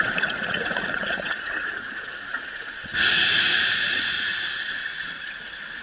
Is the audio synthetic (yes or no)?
yes